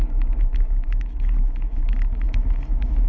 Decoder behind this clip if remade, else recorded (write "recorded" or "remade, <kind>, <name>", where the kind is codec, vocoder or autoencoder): remade, autoencoder, DAC-VAE